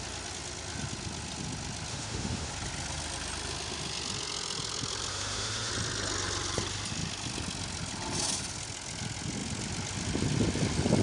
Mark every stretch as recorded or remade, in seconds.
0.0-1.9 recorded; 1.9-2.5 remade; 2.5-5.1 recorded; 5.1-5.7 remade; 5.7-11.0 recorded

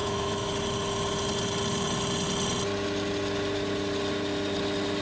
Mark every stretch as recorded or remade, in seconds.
0.0-0.5 remade; 0.5-5.0 recorded

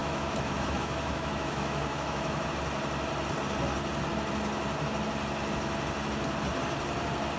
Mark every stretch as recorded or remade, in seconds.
0.0-2.4 remade; 2.4-7.4 recorded

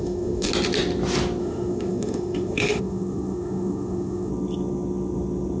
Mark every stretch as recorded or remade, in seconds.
0.0-0.5 remade; 0.5-1.4 recorded; 1.4-4.3 remade; 4.3-5.6 recorded

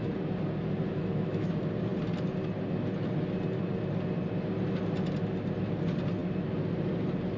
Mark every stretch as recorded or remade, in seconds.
0.0-0.9 recorded; 0.9-1.5 remade; 1.5-7.4 recorded

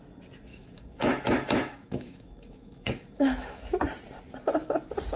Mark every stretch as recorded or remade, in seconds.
0.0-0.5 recorded; 0.5-3.6 remade; 3.6-5.2 recorded

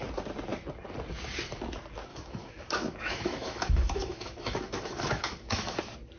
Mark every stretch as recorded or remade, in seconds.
0.0-2.1 recorded; 2.1-5.8 remade; 5.8-6.2 recorded

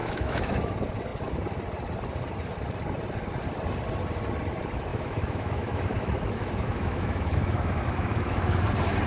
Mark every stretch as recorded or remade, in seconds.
0.0-0.7 remade; 0.7-4.9 recorded; 4.9-8.6 remade; 8.6-9.1 recorded